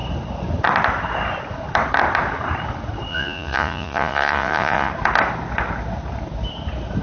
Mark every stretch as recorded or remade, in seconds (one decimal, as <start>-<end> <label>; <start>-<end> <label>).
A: 0.0-3.1 recorded; 3.1-4.9 remade; 4.9-7.0 recorded